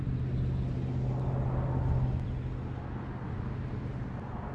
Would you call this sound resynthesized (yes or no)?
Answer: no